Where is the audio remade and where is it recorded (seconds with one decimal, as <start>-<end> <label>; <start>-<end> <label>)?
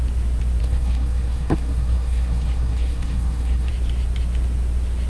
0.0-0.6 recorded; 0.6-3.7 remade; 3.7-5.1 recorded